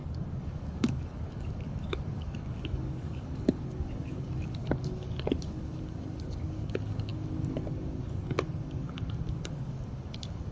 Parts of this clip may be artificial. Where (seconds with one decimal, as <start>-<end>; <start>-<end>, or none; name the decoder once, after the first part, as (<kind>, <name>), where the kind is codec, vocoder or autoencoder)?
0.0-10.5 (codec, DAC)